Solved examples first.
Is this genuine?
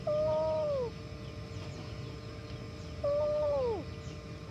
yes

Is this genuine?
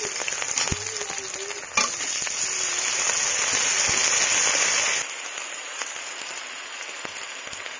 yes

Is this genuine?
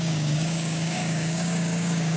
no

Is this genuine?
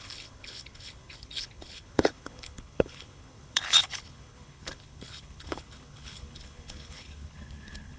no